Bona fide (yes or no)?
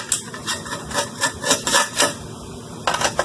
yes